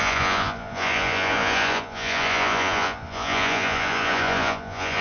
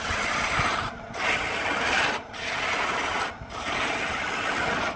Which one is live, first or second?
second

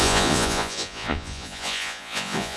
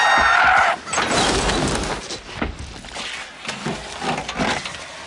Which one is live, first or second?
second